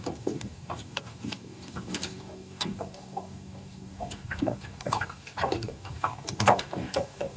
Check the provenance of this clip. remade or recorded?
remade